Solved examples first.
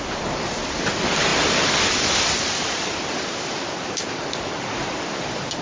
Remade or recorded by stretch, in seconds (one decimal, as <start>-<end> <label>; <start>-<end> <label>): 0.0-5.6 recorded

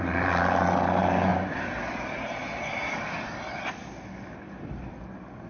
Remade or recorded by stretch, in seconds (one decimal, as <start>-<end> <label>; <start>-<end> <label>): 0.0-5.5 recorded

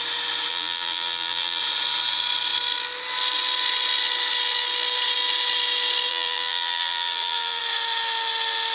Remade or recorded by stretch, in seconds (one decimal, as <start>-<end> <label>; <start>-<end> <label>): 0.0-0.5 recorded; 0.5-1.6 remade; 1.6-6.1 recorded; 6.1-7.6 remade; 7.6-8.7 recorded

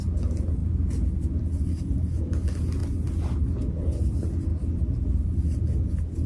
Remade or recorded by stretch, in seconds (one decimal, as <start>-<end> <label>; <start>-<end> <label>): 0.0-6.3 recorded

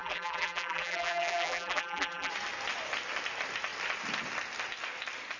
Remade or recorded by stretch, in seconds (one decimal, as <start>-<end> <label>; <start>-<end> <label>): 0.0-2.3 remade; 2.3-5.4 recorded